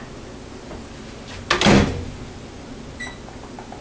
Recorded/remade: recorded